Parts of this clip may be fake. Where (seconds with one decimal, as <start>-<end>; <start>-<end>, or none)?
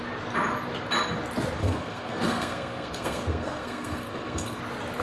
1.6-4.6